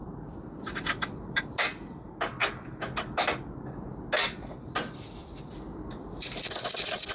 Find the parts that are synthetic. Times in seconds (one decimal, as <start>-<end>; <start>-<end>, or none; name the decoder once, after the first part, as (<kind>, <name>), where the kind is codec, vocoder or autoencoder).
0.0-1.4 (vocoder, BigVGAN v2); 5.2-6.1